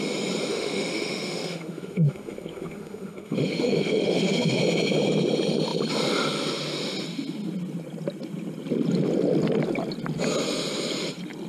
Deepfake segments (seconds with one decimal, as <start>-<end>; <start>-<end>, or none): 0.5-4.6